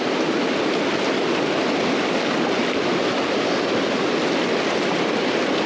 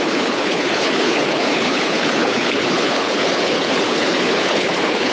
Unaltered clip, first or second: first